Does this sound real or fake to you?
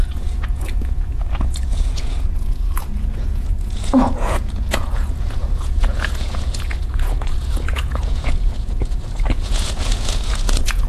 fake